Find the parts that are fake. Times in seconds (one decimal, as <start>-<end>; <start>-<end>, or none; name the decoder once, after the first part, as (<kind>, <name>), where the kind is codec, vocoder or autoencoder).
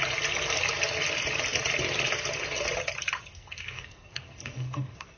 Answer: 3.3-5.2 (codec, SNAC)